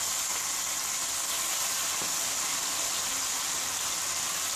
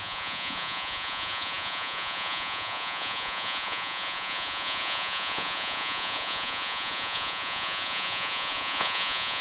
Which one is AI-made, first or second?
second